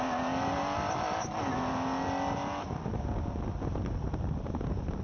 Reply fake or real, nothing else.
real